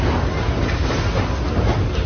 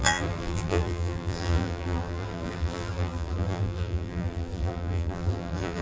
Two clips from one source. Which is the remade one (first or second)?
second